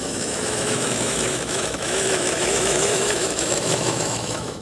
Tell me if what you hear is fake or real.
fake